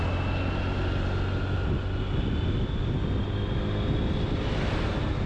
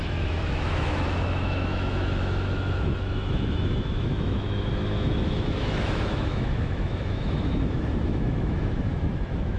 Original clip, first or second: first